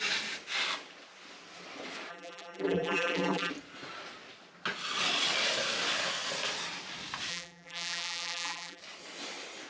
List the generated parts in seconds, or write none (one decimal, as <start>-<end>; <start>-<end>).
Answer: 2.1-3.5; 7.3-8.8